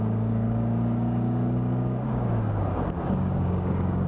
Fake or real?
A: fake